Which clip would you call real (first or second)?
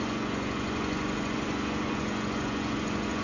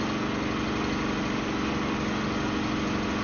second